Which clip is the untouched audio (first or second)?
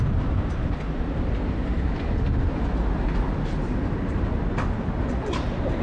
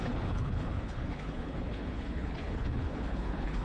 first